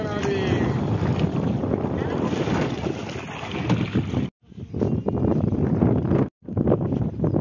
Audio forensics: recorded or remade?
recorded